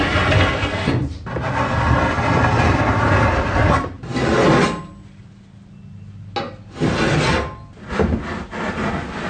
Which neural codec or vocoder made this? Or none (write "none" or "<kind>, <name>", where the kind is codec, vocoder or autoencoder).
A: none